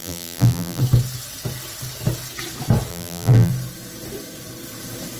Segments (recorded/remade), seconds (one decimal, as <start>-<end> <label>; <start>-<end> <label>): 0.0-0.8 remade; 0.8-2.9 recorded; 2.9-3.5 remade; 3.5-5.2 recorded